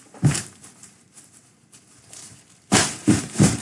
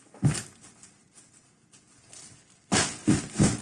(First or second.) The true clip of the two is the second